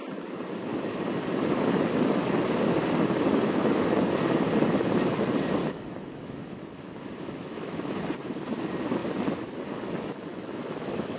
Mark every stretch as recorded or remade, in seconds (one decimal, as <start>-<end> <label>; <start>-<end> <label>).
0.0-3.3 recorded; 3.3-3.8 remade; 3.8-5.6 recorded; 5.6-8.0 remade; 8.0-10.3 recorded; 10.3-11.2 remade